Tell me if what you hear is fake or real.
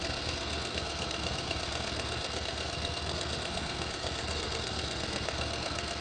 fake